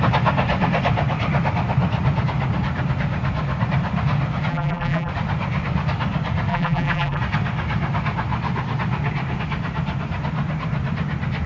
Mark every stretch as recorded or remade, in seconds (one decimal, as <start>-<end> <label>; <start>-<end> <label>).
0.0-4.5 recorded; 4.5-5.1 remade; 5.1-6.5 recorded; 6.5-7.2 remade; 7.2-11.5 recorded

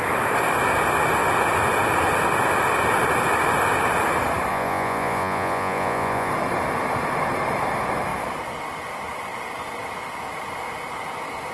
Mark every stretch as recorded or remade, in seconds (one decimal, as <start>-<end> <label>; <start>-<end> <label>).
0.0-4.5 recorded; 4.5-6.3 remade; 6.3-11.5 recorded

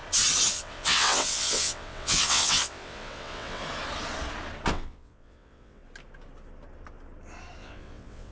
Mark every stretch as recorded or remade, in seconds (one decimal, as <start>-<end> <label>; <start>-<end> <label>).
0.0-0.5 recorded; 0.5-3.6 remade; 3.6-4.7 recorded; 4.7-5.8 remade; 5.8-7.6 recorded; 7.6-8.3 remade

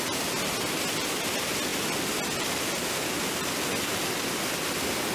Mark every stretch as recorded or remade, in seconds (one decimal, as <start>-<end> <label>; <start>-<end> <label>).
0.0-5.1 recorded